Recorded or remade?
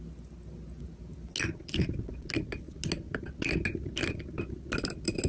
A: recorded